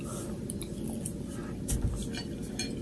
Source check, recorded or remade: recorded